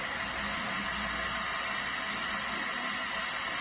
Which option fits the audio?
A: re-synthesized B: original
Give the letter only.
B